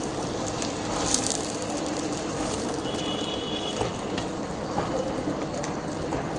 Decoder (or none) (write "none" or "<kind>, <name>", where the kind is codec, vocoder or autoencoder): vocoder, BigVGAN v2